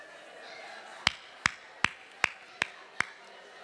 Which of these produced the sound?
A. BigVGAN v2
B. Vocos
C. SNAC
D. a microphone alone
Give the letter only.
D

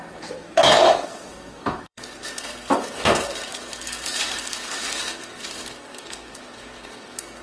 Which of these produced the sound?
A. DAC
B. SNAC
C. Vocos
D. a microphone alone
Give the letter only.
B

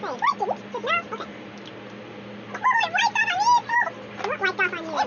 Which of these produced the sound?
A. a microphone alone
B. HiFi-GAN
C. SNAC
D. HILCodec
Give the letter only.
A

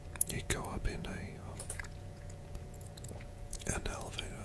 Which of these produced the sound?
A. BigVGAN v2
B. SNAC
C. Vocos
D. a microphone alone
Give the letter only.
C